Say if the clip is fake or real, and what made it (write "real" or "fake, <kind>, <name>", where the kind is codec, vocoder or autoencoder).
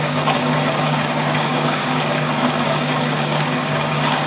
fake, codec, DAC